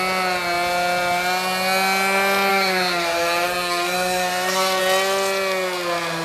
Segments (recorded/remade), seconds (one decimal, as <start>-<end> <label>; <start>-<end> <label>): 0.0-2.5 recorded; 2.5-4.8 remade; 4.8-6.2 recorded